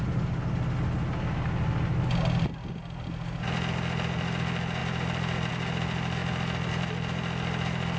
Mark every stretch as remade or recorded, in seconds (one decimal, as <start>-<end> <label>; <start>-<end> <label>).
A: 0.0-8.0 recorded